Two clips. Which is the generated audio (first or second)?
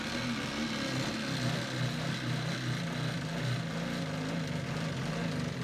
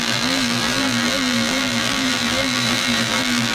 second